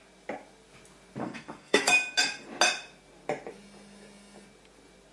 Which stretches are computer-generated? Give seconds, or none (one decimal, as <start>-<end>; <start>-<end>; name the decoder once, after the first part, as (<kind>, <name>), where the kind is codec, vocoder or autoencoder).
1.2-1.9 (codec, SNAC)